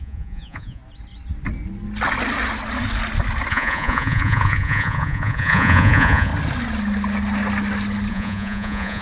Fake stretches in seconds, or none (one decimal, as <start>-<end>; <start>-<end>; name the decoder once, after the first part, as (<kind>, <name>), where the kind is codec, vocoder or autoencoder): 0.0-0.8 (vocoder, Vocos); 3.5-6.3; 8.1-9.0